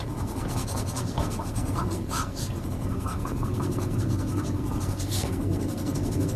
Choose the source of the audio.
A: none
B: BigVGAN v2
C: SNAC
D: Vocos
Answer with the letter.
C